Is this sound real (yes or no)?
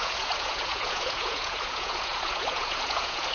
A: no